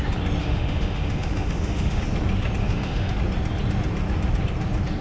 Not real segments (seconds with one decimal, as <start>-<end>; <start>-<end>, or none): 0.4-2.0; 2.6-3.2